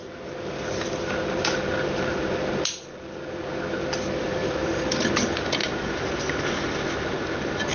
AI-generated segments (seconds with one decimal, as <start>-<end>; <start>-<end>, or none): 4.4-5.1; 5.6-6.4